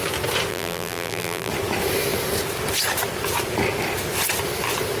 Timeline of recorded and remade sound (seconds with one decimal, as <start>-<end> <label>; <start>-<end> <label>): 0.0-0.5 recorded; 0.5-1.5 remade; 1.5-5.0 recorded